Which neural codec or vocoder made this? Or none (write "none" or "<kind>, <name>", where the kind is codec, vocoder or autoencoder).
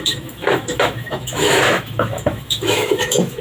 autoencoder, DAC-VAE